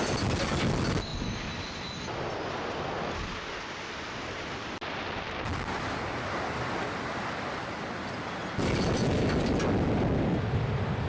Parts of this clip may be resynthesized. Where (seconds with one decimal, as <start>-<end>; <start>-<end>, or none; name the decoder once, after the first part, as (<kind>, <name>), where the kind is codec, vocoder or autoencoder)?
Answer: none